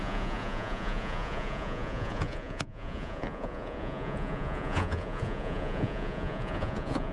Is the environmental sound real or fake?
fake